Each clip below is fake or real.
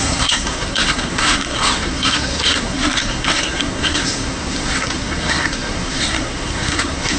fake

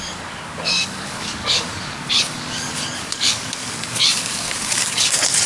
fake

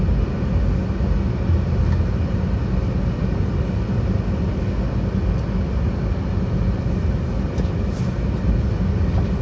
real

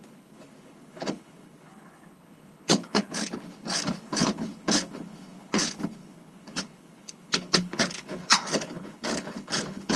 fake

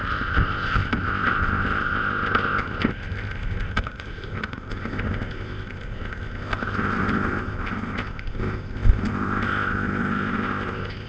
fake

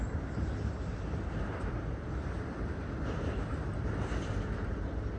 real